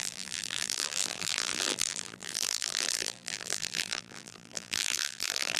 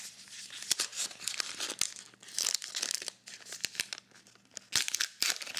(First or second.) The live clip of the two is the second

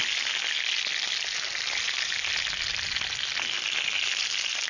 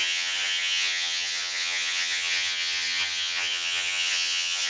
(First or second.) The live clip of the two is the first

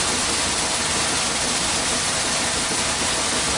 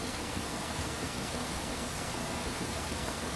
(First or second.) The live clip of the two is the first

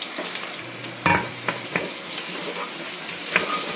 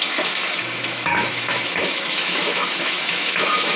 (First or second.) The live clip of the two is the first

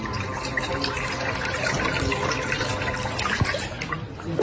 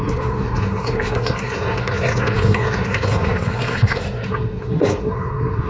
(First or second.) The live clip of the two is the first